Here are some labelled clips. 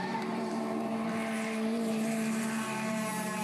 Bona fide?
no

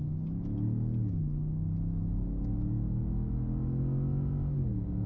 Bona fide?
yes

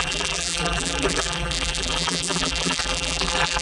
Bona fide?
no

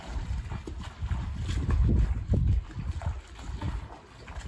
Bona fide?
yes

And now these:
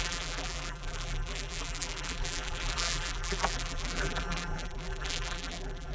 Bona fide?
no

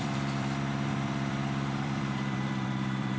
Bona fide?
no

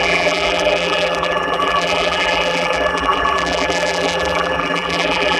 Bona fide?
no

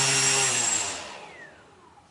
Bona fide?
no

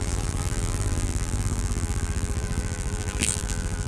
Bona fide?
no